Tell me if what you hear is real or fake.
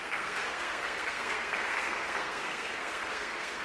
fake